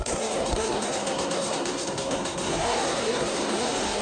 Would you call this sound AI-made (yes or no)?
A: yes